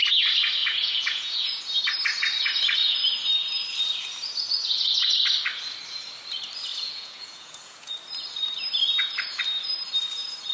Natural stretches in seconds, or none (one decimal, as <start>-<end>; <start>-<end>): 0.0-0.6; 1.6-4.6; 5.1-6.7; 8.0-10.5